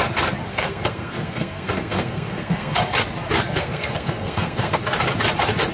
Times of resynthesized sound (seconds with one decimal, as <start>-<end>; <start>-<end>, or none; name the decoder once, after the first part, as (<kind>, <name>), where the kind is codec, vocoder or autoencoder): 0.5-2.8 (codec, SNAC); 3.6-4.8